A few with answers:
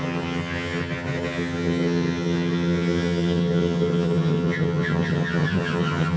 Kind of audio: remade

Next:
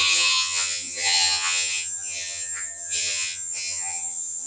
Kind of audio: remade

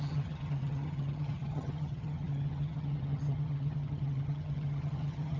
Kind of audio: remade